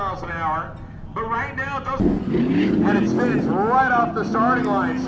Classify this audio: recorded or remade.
recorded